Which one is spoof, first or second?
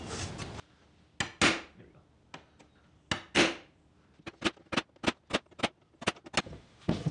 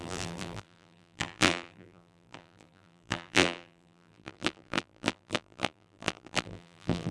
second